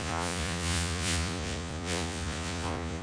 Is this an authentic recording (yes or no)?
no